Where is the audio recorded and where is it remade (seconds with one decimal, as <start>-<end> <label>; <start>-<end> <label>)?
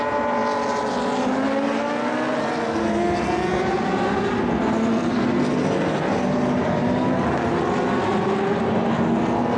0.0-9.6 recorded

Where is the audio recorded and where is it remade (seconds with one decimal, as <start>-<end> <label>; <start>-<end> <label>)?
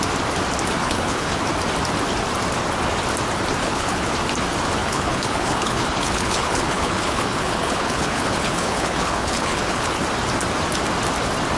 0.0-0.8 recorded; 0.8-1.4 remade; 1.4-3.6 recorded; 3.6-4.1 remade; 4.1-4.8 recorded; 4.8-10.0 remade; 10.0-11.6 recorded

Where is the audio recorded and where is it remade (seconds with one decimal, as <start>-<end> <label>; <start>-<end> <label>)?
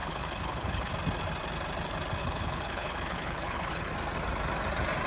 0.0-0.9 remade; 0.9-2.2 recorded; 2.2-3.9 remade; 3.9-5.1 recorded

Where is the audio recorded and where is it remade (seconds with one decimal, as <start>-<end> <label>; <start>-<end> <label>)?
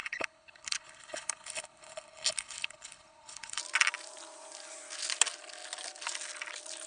0.0-3.6 remade; 3.6-6.9 recorded